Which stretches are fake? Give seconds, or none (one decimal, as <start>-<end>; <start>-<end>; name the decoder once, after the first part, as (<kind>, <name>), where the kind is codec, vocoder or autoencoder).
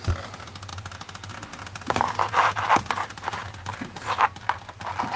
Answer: none